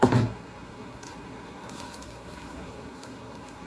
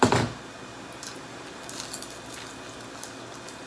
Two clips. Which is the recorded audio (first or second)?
second